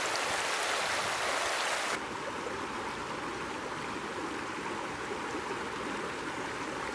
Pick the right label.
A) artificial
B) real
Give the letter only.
B